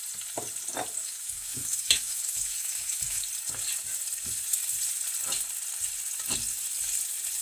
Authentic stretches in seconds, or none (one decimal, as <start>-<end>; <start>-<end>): 0.0-1.0; 3.2-7.4

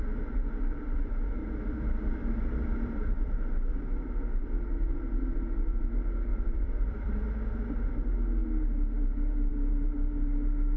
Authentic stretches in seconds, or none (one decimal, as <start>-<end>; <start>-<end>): 0.0-1.4; 3.3-6.3; 7.1-10.8